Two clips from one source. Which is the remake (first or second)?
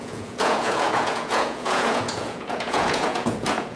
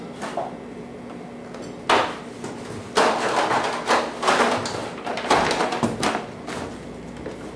first